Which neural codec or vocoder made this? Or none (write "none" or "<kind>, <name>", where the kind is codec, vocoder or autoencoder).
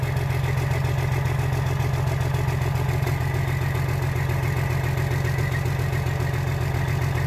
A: none